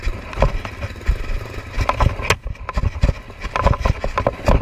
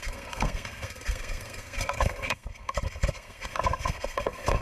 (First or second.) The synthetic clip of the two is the second